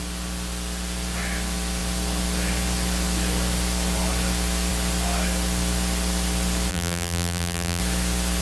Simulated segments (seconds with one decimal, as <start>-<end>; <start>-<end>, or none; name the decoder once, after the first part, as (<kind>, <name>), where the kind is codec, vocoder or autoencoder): 6.7-7.8 (vocoder, BigVGAN v2)